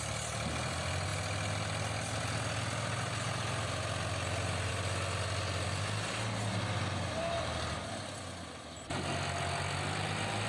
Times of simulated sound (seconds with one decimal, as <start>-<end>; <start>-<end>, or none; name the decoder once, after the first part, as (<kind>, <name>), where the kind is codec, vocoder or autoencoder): none